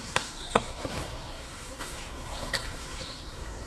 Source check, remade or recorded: remade